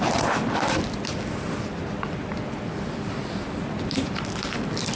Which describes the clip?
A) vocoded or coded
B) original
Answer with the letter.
B